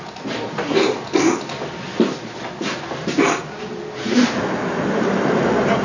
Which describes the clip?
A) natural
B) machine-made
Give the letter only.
A